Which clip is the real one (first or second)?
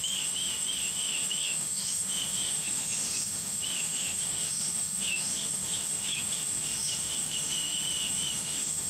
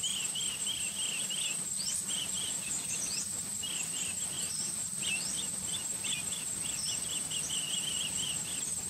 second